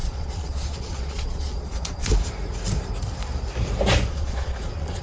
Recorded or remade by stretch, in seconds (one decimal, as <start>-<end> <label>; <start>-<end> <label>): 0.0-2.1 remade; 2.1-4.1 recorded; 4.1-5.0 remade